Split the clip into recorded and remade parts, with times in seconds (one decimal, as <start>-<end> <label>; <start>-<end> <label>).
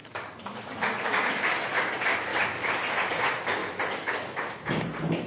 0.0-1.1 remade; 1.1-2.3 recorded; 2.3-3.2 remade; 3.2-5.3 recorded